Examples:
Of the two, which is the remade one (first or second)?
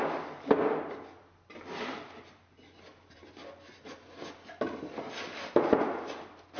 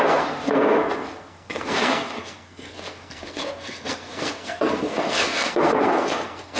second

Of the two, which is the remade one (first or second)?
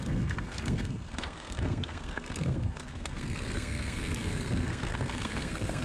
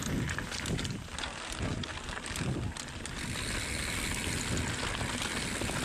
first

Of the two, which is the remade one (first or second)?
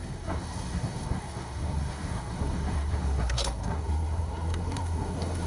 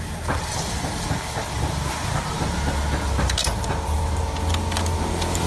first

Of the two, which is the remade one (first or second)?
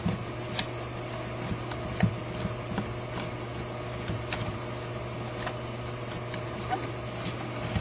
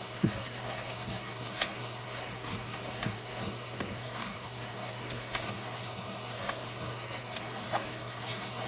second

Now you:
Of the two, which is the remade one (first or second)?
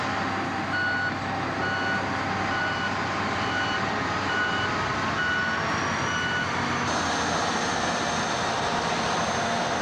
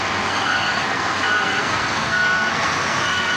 second